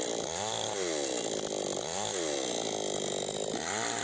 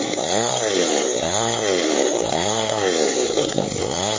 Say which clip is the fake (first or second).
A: second